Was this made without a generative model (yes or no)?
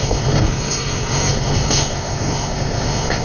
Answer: no